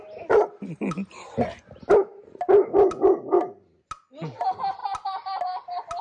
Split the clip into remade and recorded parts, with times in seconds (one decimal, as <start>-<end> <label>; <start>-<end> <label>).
0.0-6.0 recorded